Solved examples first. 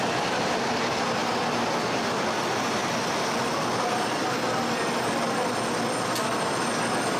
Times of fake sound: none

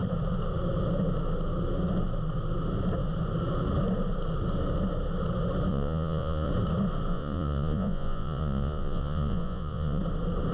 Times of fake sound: 5.7-6.5 (vocoder, Vocos); 7.1-10.0

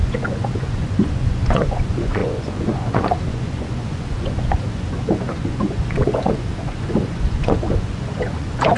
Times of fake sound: 0.0-8.8 (vocoder, Vocos)

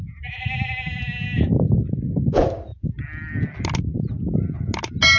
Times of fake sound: none

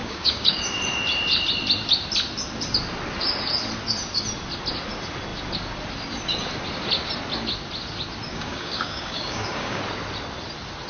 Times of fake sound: 0.0-0.6 (codec, DAC); 8.3-9.8

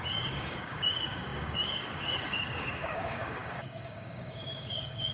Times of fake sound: 0.0-5.1 (codec, DAC)

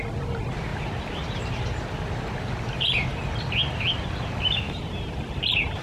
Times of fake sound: 0.7-1.5 (vocoder, BigVGAN v2)